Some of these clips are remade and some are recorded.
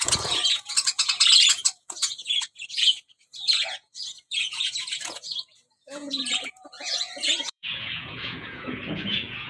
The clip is remade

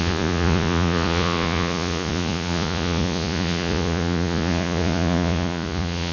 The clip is remade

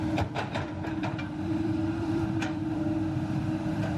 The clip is remade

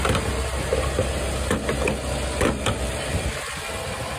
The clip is recorded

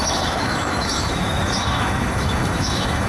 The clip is remade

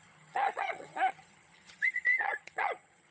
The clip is remade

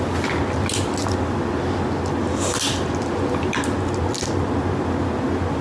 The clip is recorded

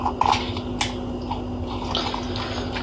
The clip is recorded